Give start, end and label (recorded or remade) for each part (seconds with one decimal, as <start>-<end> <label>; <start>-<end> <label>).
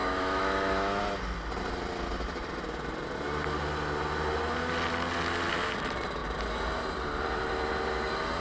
0.0-1.0 remade; 1.0-8.4 recorded